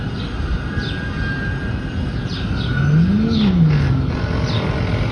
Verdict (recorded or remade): recorded